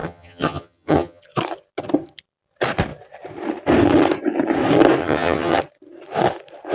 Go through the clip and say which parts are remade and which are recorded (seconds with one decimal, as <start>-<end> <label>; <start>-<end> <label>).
0.0-1.2 remade; 1.2-5.0 recorded; 5.0-5.6 remade; 5.6-6.7 recorded